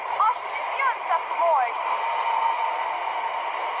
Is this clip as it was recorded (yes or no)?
yes